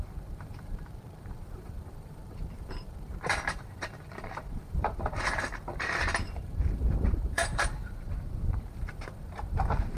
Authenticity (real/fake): fake